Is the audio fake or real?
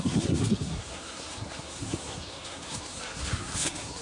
fake